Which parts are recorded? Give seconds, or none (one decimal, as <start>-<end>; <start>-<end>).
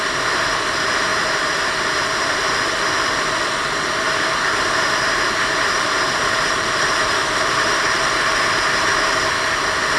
0.0-1.1; 2.6-10.0